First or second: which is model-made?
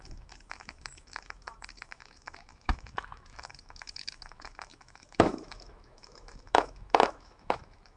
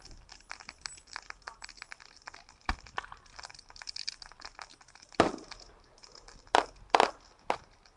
first